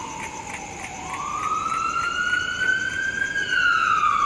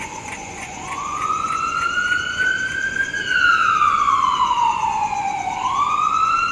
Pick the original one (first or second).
first